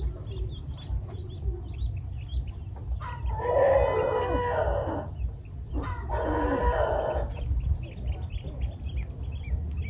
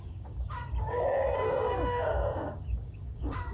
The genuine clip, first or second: first